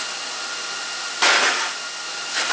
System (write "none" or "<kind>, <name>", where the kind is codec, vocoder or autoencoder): none